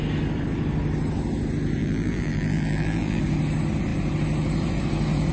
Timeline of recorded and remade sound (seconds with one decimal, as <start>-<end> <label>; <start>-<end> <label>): 0.0-1.8 recorded; 1.8-3.2 remade; 3.2-5.3 recorded